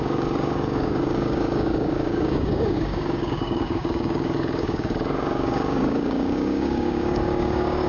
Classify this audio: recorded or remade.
remade